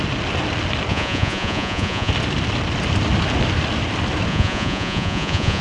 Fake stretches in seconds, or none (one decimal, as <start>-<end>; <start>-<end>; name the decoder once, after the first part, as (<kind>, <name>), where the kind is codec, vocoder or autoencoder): 0.9-2.1 (vocoder, Vocos); 4.3-5.6